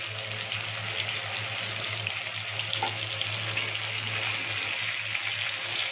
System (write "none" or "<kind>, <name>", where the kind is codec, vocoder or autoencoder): none